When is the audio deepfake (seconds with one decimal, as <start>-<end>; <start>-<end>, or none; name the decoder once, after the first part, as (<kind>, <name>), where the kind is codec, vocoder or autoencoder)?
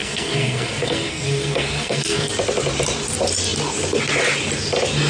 0.0-2.3 (codec, SNAC)